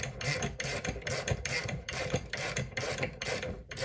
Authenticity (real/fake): fake